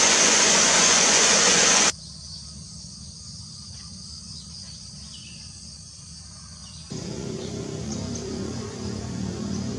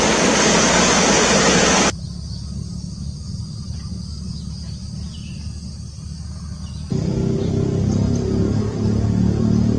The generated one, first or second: first